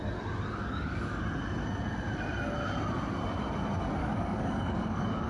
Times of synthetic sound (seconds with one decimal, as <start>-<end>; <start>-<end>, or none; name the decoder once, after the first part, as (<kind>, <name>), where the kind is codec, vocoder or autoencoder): 0.6-1.2 (codec, DAC); 4.0-5.3